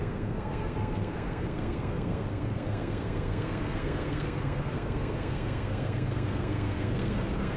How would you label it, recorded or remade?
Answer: remade